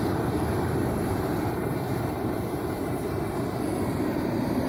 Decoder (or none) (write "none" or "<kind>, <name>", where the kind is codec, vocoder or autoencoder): vocoder, BigVGAN v2